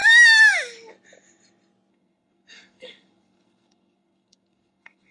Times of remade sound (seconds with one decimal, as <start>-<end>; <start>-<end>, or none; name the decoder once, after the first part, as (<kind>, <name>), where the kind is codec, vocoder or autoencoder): 1.9-5.1 (codec, SNAC)